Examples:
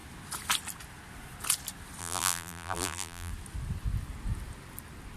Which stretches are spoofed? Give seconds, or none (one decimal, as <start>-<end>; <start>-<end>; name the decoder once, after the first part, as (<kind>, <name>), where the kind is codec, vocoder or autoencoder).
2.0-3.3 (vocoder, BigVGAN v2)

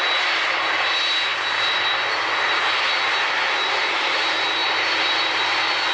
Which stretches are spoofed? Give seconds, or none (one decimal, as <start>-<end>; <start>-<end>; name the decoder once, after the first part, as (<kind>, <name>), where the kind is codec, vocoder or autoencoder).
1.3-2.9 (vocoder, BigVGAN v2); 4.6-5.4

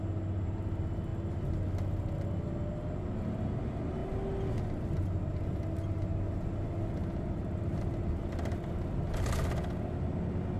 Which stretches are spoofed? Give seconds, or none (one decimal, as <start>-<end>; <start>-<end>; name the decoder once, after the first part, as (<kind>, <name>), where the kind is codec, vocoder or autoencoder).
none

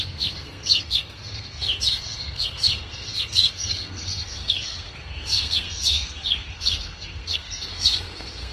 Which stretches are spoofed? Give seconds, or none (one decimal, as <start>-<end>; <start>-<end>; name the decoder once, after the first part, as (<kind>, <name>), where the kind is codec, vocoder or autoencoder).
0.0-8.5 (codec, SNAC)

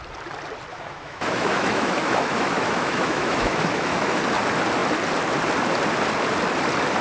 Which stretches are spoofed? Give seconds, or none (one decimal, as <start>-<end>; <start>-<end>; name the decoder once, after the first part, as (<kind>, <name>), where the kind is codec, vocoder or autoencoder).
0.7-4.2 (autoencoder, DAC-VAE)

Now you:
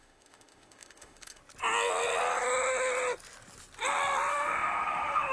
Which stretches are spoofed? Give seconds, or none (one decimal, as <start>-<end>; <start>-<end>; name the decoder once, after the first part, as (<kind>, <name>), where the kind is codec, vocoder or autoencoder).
0.0-1.4 (autoencoder, DAC-VAE); 4.3-5.3

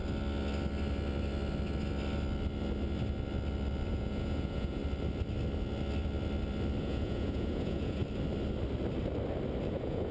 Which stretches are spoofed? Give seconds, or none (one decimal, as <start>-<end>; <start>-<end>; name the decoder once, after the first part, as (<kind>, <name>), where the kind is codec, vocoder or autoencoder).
3.9-4.8 (vocoder, Vocos); 6.8-8.0; 9.7-10.1

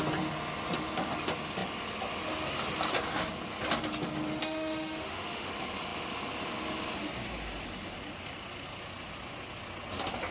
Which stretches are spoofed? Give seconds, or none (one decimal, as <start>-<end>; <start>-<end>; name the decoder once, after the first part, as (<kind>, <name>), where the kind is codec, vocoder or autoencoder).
4.4-5.5 (autoencoder, DAC-VAE)